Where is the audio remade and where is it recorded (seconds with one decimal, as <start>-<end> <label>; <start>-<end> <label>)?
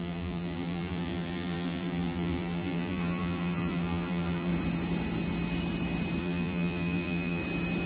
0.0-4.5 remade; 4.5-6.2 recorded; 6.2-7.4 remade; 7.4-7.9 recorded